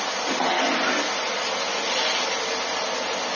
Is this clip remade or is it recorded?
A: recorded